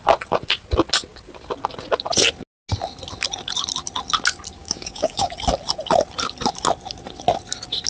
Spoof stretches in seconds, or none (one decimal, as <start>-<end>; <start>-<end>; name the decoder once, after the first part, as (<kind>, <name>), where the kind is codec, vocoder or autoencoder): 4.6-5.3 (codec, DAC)